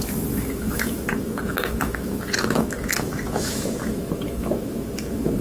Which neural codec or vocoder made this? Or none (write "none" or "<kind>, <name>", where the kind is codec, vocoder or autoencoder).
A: autoencoder, DAC-VAE